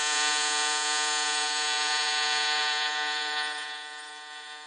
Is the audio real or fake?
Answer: fake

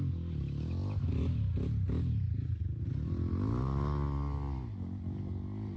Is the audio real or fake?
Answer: real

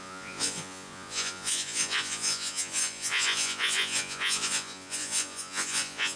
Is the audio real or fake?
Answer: fake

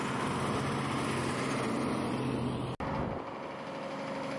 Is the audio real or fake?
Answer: real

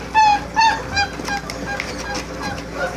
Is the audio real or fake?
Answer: real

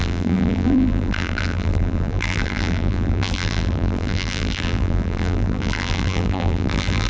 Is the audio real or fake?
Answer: fake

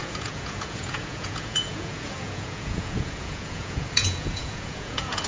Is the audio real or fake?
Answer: fake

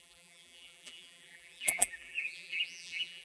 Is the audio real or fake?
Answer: fake